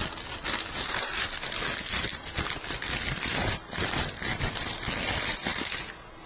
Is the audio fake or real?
real